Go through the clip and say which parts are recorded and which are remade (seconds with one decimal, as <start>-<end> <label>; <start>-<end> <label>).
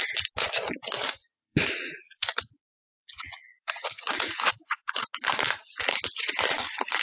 0.0-0.8 recorded; 0.8-5.0 remade; 5.0-7.0 recorded